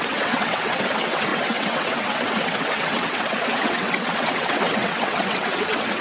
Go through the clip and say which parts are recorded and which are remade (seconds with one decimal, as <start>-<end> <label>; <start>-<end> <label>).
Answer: 0.0-6.0 remade